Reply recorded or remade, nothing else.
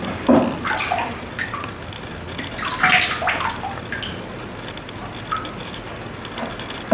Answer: recorded